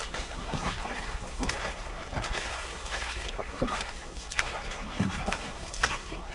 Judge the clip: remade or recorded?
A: remade